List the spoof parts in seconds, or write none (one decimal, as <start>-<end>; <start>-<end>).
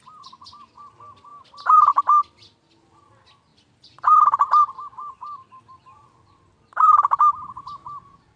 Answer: 3.5-7.2